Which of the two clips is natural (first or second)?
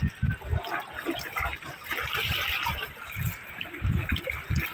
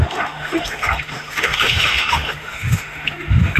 first